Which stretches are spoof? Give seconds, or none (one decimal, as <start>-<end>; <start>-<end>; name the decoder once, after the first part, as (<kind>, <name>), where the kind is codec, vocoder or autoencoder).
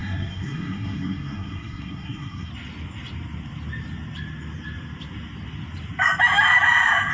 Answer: 0.0-2.5 (codec, SNAC)